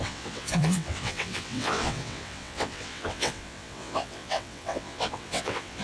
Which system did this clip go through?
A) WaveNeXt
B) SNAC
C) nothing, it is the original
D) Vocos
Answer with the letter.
A